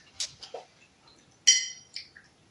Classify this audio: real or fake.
real